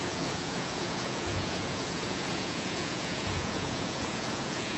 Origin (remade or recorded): remade